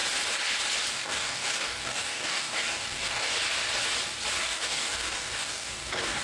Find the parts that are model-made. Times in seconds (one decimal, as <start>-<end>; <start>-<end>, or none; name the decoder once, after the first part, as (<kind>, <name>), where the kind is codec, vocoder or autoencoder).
0.9-3.3 (codec, DAC); 4.4-6.2